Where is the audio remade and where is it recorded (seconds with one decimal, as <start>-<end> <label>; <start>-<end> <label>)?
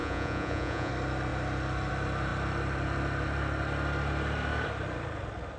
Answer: 0.0-0.9 remade; 0.9-5.6 recorded